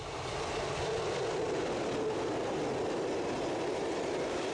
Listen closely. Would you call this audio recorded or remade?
recorded